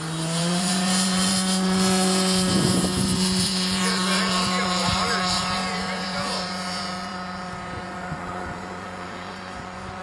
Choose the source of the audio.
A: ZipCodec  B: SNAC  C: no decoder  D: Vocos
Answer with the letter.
D